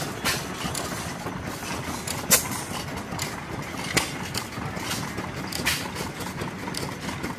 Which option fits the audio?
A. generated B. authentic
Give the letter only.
B